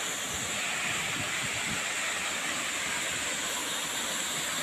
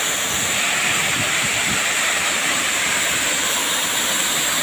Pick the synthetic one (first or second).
second